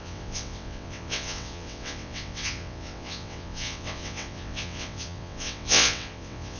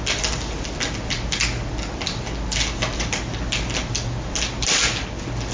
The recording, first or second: second